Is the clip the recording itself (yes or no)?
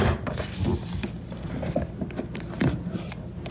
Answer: no